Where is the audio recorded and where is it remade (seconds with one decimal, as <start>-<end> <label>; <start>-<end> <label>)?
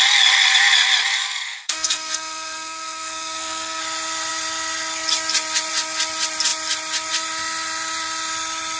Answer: 0.0-1.1 recorded; 1.1-3.8 remade; 3.8-8.8 recorded